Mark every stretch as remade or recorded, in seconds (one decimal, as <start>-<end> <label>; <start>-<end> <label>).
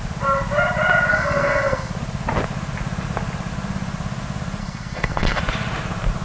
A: 0.0-1.1 recorded; 1.1-1.9 remade; 1.9-4.6 recorded; 4.6-5.4 remade; 5.4-6.2 recorded